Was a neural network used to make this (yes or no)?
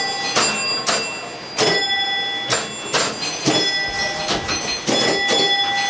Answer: no